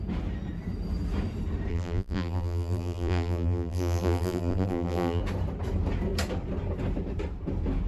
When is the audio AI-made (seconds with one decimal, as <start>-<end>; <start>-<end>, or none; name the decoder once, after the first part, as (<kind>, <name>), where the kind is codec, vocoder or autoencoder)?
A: 1.7-5.2 (vocoder, BigVGAN v2)